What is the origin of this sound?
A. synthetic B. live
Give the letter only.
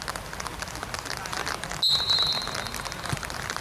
B